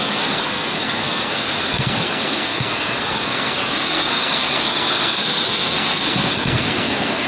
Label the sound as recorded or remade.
remade